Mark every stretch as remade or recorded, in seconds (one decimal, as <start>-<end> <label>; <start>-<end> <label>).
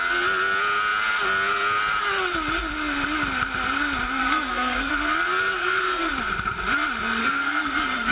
0.0-4.2 recorded; 4.2-4.9 remade; 4.9-5.6 recorded; 5.6-6.1 remade; 6.1-7.2 recorded; 7.2-8.1 remade